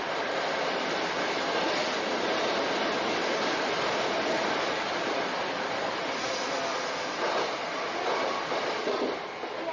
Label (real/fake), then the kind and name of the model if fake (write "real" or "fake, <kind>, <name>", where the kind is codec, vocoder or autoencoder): real